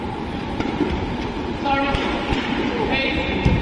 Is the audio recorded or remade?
remade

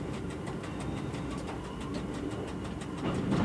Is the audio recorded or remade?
recorded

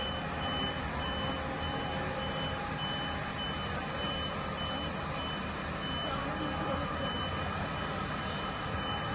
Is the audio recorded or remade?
recorded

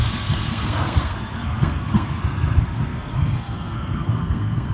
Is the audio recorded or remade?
remade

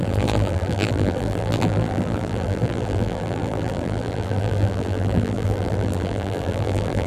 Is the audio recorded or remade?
remade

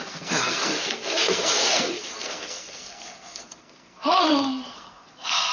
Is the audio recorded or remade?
remade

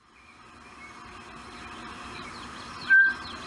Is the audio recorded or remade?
recorded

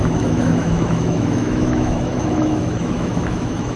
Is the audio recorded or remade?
remade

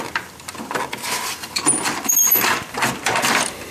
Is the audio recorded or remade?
remade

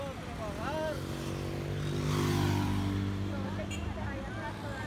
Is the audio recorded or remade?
recorded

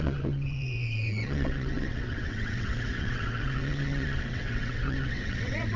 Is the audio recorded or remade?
remade